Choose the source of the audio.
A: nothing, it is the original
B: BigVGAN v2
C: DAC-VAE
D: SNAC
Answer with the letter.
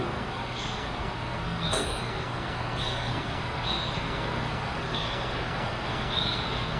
D